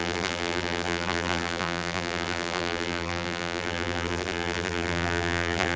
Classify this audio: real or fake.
fake